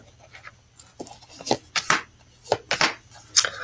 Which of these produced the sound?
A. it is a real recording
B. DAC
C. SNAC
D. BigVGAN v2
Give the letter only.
A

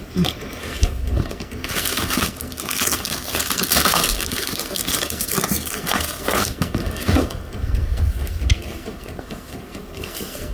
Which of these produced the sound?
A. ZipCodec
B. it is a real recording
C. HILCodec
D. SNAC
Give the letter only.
D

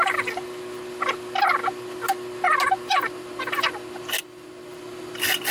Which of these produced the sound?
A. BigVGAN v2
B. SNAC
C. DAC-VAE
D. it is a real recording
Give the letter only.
D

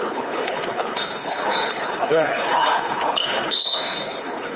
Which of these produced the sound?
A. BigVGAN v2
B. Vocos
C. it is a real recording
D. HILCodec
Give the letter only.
D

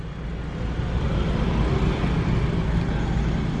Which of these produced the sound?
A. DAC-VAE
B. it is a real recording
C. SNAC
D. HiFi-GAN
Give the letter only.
B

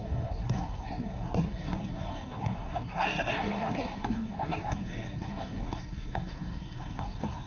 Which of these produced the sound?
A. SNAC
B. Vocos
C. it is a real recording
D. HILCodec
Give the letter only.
A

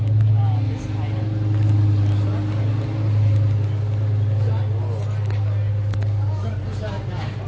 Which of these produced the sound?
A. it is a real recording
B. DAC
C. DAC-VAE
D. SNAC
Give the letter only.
A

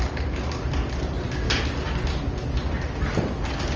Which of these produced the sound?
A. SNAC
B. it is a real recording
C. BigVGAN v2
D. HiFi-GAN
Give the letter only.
B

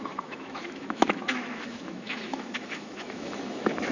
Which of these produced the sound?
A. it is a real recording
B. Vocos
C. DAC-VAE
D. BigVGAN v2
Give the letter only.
C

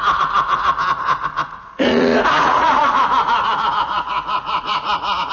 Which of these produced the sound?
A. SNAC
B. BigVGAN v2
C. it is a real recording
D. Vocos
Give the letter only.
D